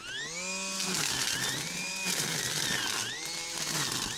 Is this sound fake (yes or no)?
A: no